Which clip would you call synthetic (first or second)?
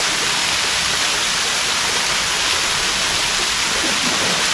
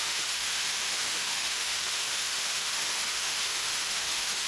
second